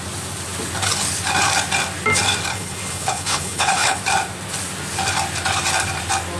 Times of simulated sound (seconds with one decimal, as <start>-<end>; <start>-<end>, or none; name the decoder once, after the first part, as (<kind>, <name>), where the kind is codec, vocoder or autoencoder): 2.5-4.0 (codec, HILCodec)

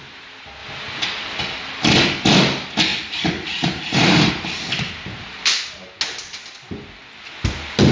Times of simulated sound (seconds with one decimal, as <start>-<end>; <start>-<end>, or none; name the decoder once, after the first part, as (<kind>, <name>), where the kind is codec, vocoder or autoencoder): 2.9-4.3 (vocoder, BigVGAN v2)

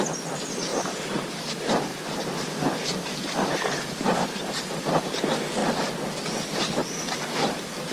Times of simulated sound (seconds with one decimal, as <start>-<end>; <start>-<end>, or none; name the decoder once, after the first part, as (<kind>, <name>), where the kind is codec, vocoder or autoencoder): 0.7-1.5 (vocoder, BigVGAN v2); 1.9-4.5

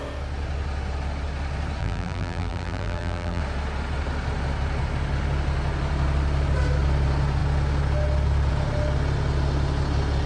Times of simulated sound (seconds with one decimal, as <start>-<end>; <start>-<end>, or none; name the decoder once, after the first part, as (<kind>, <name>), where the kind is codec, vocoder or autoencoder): 1.8-3.4 (vocoder, BigVGAN v2)

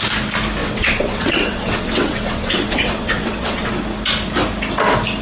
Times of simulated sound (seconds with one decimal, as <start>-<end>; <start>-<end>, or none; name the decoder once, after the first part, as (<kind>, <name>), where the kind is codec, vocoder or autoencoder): 0.6-3.7 (vocoder, WaveNeXt)

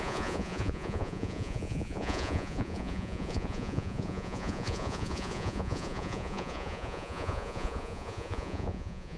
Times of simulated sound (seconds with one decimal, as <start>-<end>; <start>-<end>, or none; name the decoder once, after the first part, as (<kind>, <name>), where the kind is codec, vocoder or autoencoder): 0.0-9.2 (vocoder, Vocos)

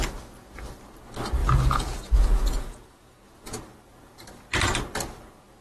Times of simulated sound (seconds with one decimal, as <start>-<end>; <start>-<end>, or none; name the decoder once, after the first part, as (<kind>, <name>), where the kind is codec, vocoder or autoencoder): 1.4-3.6 (vocoder, Vocos)

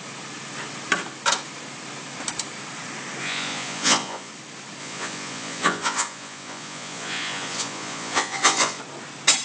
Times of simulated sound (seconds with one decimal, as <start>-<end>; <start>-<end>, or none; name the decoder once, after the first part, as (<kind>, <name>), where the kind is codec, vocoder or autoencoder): 3.2-4.3 (vocoder, Vocos); 4.8-8.8